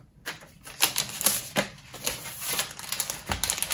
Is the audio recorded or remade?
recorded